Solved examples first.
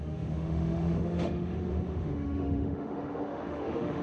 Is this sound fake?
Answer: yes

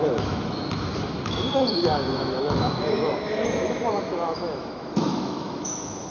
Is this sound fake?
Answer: yes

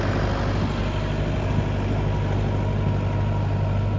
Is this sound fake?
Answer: no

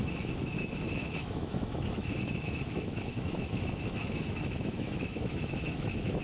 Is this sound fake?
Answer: yes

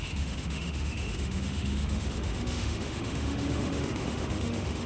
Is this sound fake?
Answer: yes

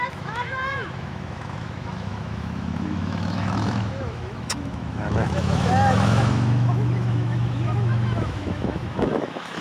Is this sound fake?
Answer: yes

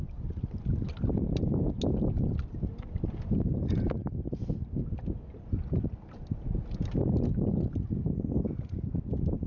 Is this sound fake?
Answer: no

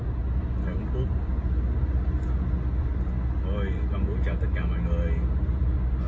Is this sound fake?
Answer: no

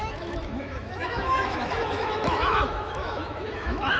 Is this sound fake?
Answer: yes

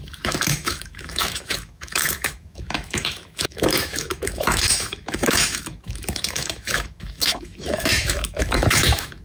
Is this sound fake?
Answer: yes